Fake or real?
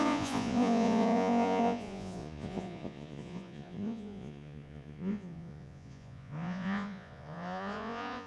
fake